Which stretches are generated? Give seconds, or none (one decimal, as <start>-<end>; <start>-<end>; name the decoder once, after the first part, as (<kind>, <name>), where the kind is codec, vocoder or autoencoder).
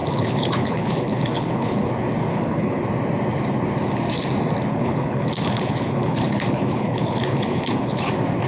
0.0-1.9 (codec, HILCodec); 2.3-2.8; 4.7-8.1